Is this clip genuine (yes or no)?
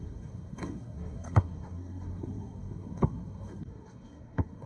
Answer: no